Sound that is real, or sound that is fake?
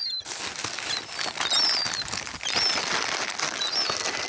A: real